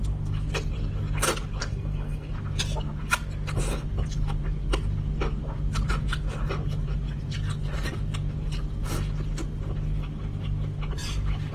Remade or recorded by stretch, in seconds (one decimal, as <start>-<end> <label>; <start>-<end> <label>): 0.0-1.6 recorded; 1.6-2.3 remade; 2.3-11.5 recorded